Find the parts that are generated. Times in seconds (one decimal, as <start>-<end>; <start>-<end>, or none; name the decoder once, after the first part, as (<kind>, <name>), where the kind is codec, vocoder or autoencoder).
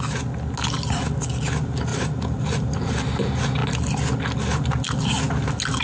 1.9-3.1 (vocoder, BigVGAN v2)